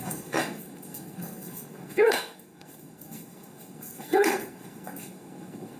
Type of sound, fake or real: fake